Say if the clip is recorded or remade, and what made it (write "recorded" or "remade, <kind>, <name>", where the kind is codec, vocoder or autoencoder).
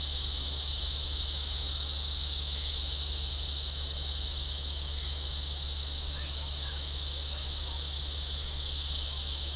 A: remade, autoencoder, DAC-VAE